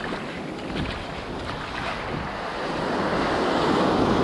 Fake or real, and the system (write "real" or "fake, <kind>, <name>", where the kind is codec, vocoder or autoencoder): real